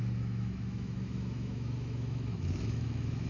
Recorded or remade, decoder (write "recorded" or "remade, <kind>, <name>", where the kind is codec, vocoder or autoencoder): remade, autoencoder, DAC-VAE